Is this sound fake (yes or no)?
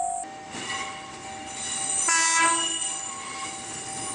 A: no